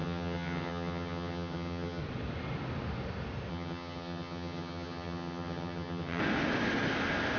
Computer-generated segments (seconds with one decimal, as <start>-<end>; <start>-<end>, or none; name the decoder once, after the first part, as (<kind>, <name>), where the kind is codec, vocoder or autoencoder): 0.0-2.0 (vocoder, HiFi-GAN); 3.5-6.2